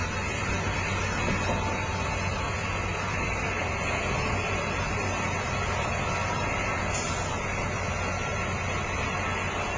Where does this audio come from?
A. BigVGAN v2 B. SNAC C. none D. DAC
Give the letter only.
C